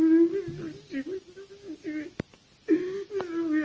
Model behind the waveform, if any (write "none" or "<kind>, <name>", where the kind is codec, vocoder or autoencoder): none